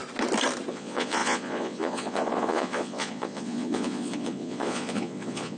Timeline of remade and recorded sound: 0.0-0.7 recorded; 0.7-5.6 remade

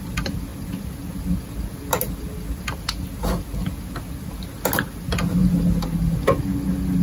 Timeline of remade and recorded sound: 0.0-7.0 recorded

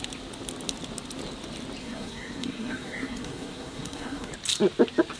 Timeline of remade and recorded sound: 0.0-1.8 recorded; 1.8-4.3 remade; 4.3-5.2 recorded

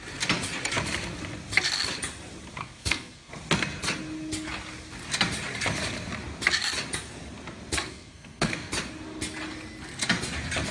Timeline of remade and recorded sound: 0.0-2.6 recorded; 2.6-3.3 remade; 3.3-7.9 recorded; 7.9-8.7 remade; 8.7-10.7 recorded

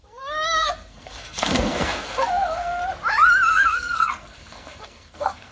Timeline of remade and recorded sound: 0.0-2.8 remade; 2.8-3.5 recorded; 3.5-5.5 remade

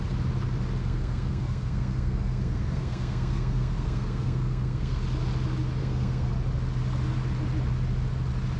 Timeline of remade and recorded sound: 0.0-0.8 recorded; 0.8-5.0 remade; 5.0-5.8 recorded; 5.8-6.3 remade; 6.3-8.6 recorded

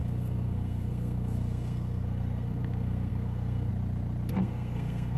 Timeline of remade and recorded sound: 0.0-3.7 remade; 3.7-4.3 recorded; 4.3-5.2 remade

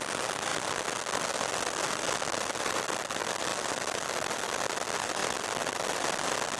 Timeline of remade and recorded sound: 0.0-6.6 recorded